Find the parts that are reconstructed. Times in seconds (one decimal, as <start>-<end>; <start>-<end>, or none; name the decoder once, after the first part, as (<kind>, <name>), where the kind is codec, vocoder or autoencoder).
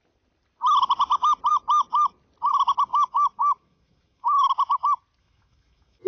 2.9-4.5 (autoencoder, DAC-VAE); 5.2-6.1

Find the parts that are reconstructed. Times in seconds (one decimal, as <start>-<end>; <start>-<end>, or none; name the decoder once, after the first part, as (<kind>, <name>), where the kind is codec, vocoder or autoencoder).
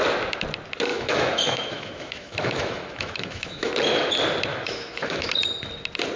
0.9-3.7 (autoencoder, DAC-VAE); 4.5-5.3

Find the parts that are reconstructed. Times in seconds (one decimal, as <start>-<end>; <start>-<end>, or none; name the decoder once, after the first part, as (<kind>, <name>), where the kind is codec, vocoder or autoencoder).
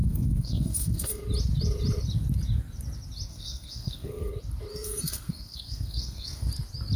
0.0-1.2 (codec, SNAC); 3.3-4.3; 4.7-6.5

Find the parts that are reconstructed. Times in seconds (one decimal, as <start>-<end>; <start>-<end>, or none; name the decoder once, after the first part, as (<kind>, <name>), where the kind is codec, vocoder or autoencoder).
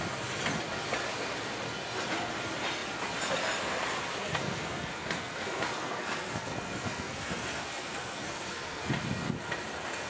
4.2-8.9 (codec, SNAC)